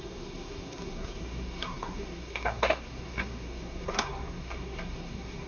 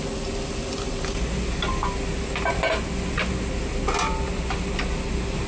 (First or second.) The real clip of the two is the second